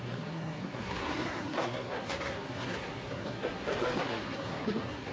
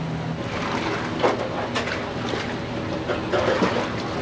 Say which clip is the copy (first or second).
first